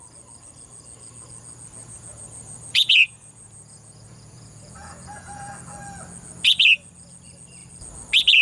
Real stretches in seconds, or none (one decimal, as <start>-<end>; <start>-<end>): 0.0-1.8; 5.5-8.4